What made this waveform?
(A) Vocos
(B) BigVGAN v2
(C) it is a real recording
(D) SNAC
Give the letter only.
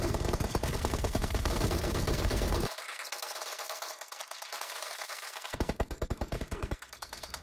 D